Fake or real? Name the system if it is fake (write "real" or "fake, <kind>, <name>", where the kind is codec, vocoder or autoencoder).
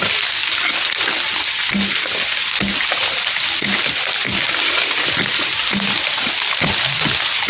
real